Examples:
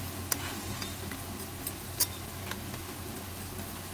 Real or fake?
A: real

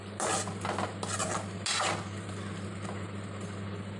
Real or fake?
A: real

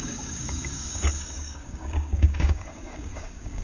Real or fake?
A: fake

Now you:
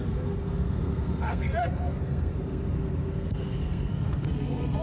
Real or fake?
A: fake